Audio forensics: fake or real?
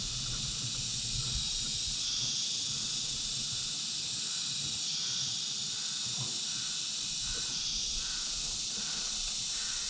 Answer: real